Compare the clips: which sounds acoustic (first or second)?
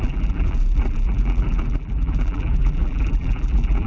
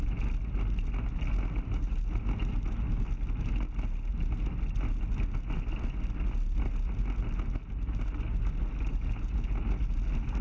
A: second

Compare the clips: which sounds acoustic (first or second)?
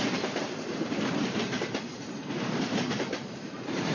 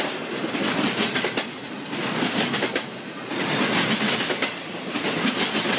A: second